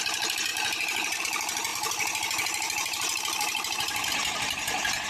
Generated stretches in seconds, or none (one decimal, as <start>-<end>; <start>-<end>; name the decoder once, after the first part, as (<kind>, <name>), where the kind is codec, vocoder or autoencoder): 0.5-1.2 (vocoder, BigVGAN v2); 1.7-5.1